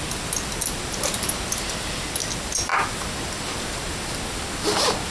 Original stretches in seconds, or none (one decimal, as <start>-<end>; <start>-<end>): 0.0-5.1